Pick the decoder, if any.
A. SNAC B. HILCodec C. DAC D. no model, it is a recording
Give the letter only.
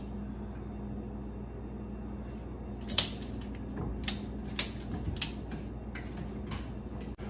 D